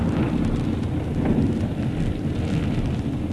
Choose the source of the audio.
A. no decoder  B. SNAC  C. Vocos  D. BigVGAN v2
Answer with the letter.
A